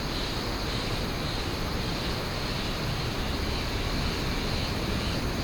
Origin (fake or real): real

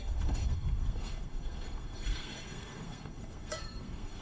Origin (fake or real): fake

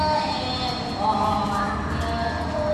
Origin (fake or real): real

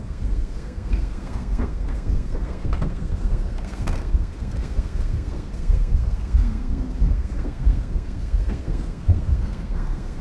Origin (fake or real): fake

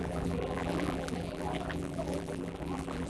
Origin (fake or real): fake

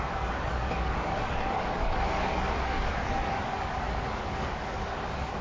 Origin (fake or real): fake